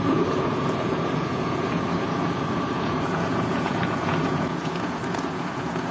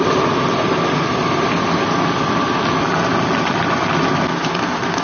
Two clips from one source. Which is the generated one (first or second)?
first